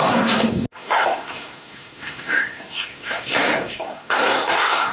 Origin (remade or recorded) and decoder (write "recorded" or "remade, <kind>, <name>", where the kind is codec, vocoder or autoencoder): remade, codec, SNAC